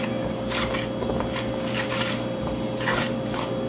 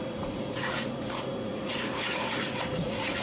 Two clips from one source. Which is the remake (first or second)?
second